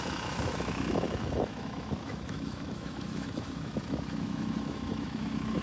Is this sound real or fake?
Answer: fake